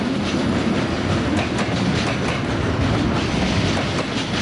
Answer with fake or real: real